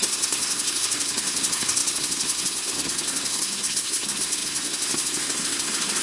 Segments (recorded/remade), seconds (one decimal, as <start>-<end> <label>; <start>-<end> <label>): 0.0-6.0 remade